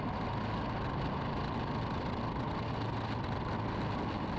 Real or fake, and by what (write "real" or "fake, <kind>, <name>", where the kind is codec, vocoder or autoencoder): real